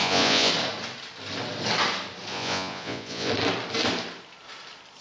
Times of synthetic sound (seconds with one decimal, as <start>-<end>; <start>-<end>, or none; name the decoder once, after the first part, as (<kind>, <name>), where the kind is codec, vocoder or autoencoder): 0.0-0.5 (vocoder, Vocos); 2.3-3.3